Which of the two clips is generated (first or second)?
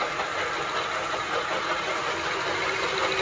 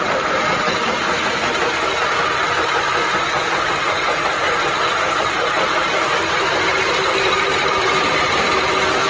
second